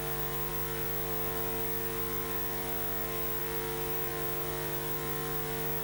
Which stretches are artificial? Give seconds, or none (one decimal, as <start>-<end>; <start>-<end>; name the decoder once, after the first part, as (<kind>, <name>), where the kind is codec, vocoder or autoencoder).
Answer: none